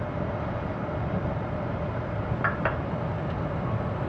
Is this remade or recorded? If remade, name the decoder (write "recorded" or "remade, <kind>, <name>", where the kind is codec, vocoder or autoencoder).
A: recorded